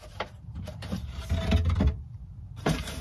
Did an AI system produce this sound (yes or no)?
yes